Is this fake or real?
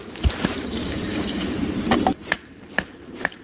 fake